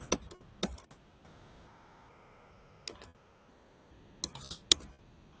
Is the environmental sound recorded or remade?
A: recorded